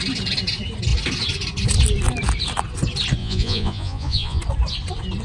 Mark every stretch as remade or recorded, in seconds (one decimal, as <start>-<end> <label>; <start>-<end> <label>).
0.0-3.2 recorded; 3.2-4.4 remade; 4.4-5.2 recorded

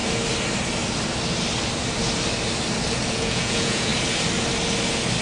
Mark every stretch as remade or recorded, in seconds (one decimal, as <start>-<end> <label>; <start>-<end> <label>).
0.0-3.1 recorded; 3.1-3.9 remade; 3.9-5.2 recorded